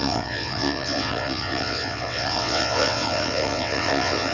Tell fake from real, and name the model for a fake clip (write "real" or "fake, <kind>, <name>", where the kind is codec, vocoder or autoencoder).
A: fake, vocoder, WaveNeXt